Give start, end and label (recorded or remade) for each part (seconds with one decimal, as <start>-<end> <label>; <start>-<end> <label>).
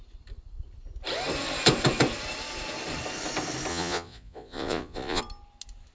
0.0-3.7 recorded; 3.7-5.2 remade; 5.2-5.9 recorded